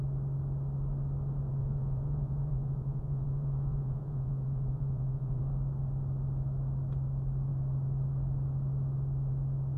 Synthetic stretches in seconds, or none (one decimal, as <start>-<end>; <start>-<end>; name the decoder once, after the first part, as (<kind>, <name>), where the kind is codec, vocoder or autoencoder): 1.5-5.4 (vocoder, Vocos)